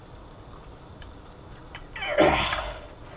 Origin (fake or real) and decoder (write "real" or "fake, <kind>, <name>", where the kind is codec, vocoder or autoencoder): real